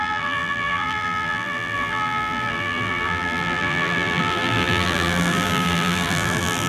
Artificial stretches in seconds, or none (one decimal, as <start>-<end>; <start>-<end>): 0.0-6.7